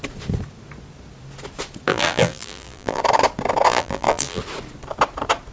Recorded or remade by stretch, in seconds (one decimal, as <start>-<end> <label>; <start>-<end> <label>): 0.0-1.9 recorded; 1.9-3.0 remade; 3.0-3.7 recorded; 3.7-4.4 remade; 4.4-5.5 recorded